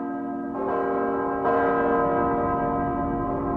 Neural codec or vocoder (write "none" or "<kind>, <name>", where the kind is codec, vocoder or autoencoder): none